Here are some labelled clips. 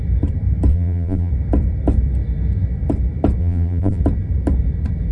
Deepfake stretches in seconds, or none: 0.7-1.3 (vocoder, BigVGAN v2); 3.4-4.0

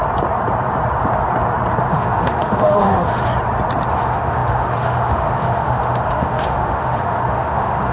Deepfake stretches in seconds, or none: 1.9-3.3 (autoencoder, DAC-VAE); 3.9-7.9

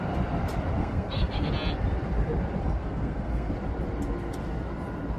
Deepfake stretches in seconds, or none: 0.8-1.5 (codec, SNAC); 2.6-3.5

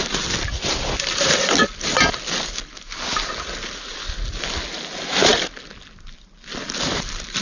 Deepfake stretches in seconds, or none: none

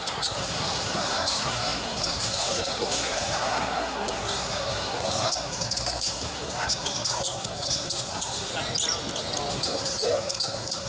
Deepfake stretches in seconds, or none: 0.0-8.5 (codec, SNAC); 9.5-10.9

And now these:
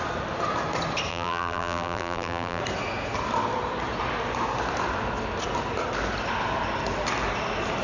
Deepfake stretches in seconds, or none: 1.1-2.6 (vocoder, BigVGAN v2)

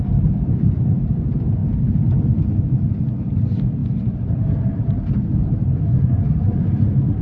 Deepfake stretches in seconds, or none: none